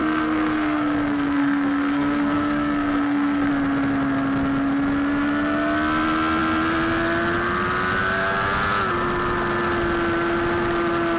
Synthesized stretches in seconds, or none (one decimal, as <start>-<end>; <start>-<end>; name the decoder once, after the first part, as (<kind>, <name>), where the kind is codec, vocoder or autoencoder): 0.0-3.5 (codec, SNAC)